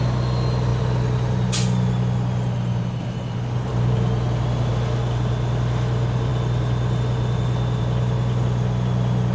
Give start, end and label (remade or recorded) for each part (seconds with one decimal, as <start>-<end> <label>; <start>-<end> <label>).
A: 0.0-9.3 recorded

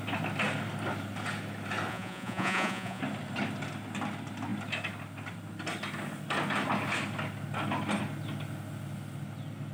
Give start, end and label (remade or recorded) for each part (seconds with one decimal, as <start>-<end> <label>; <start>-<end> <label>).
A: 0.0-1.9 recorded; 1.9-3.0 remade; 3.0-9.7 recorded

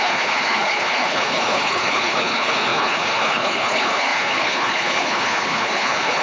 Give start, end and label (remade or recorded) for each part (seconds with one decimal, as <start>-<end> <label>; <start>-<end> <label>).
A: 0.0-6.2 remade